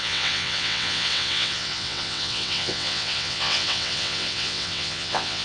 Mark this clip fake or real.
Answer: fake